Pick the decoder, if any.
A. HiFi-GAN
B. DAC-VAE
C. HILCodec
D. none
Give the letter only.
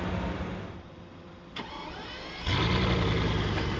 D